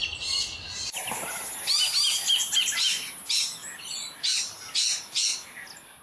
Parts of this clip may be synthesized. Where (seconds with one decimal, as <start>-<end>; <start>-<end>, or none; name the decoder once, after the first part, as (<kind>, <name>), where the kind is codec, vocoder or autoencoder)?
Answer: none